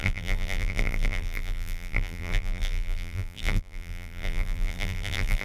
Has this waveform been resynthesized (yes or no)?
yes